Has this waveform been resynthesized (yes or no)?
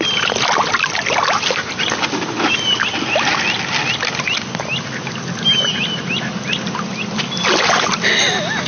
no